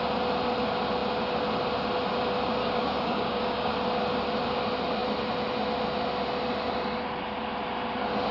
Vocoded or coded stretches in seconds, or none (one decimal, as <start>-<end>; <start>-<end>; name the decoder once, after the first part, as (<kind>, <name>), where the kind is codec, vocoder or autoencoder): 2.6-3.7 (codec, DAC)